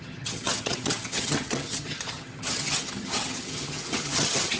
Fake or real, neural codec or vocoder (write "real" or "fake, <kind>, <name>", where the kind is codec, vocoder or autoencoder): fake, vocoder, HiFi-GAN